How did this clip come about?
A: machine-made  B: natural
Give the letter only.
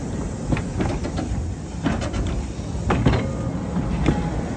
B